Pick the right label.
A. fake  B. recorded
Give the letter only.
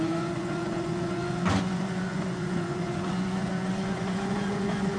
A